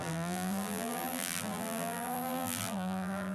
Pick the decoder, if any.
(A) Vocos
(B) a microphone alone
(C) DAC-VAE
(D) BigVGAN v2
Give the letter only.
D